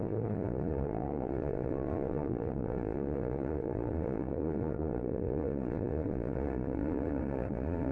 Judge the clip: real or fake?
fake